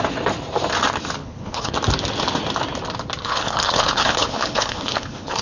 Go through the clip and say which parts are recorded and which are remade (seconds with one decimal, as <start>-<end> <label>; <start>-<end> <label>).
0.0-1.2 recorded; 1.2-1.7 remade; 1.7-3.2 recorded; 3.2-5.4 remade